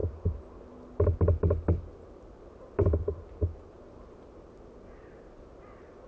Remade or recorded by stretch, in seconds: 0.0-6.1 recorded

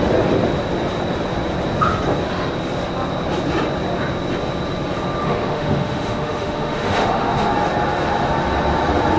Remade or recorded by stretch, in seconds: 0.0-5.2 recorded; 5.2-7.5 remade; 7.5-9.2 recorded

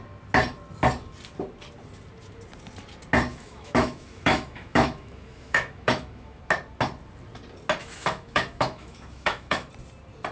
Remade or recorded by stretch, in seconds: 0.0-3.3 recorded; 3.3-6.4 remade; 6.4-7.8 recorded; 7.8-9.7 remade; 9.7-10.3 recorded

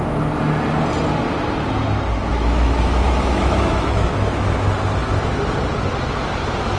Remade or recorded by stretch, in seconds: 0.0-2.3 recorded; 2.3-4.7 remade; 4.7-6.8 recorded

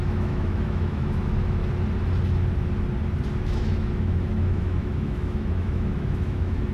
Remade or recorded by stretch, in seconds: 0.0-1.6 remade; 1.6-3.4 recorded; 3.4-6.7 remade

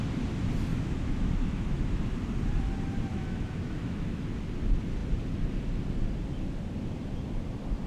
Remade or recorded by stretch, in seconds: 0.0-0.7 recorded; 0.7-2.1 remade; 2.1-3.1 recorded; 3.1-4.2 remade; 4.2-7.9 recorded